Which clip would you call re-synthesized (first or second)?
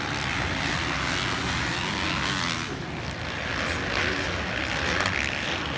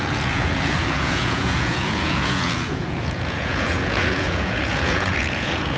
second